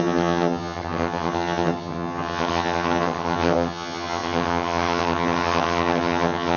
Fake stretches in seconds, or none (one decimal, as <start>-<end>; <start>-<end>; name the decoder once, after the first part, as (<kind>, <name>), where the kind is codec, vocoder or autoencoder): 0.0-6.6 (vocoder, HiFi-GAN)